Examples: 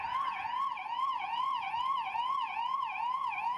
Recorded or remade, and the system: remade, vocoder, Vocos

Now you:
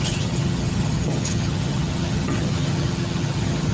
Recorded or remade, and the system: remade, vocoder, HiFi-GAN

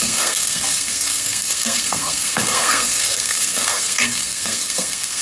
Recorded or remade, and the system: remade, codec, SNAC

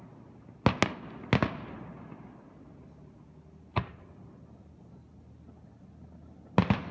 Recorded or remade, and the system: recorded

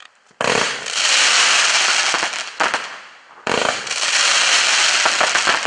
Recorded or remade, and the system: recorded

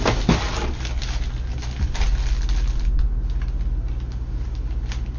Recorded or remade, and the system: recorded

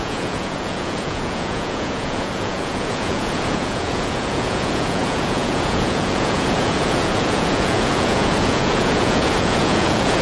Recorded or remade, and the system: remade, vocoder, Vocos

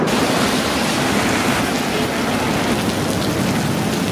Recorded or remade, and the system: recorded